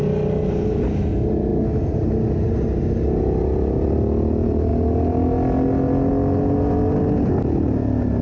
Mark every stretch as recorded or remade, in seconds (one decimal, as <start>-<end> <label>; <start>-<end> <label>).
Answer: 0.0-8.2 recorded